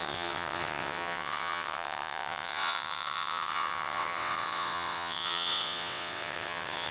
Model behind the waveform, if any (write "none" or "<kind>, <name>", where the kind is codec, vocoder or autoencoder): vocoder, WaveNeXt